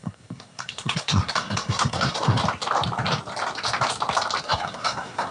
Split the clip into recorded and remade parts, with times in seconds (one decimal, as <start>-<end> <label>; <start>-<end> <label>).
0.0-2.4 remade; 2.4-4.4 recorded; 4.4-5.3 remade